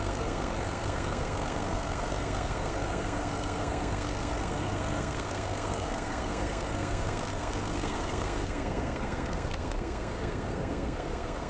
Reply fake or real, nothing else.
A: fake